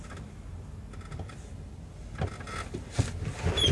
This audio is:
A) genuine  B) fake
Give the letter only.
A